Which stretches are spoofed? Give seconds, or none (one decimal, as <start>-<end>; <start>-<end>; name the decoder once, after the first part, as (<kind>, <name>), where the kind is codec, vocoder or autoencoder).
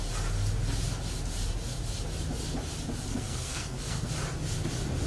3.1-4.1 (codec, SNAC)